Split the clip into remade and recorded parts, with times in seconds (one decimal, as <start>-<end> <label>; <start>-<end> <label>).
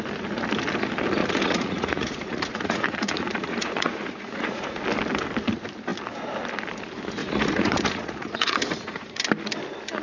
0.0-1.2 recorded; 1.2-4.8 remade; 4.8-7.2 recorded; 7.2-9.2 remade; 9.2-10.0 recorded